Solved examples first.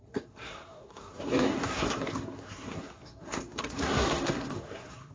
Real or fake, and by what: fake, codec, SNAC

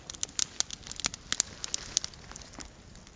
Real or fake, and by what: real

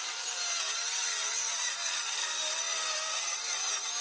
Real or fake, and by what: real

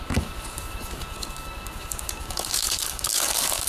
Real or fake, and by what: fake, codec, DAC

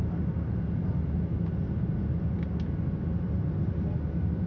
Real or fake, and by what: real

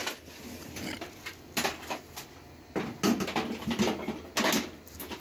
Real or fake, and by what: real